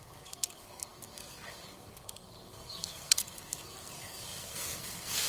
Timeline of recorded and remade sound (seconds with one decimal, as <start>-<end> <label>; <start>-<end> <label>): 0.0-5.3 remade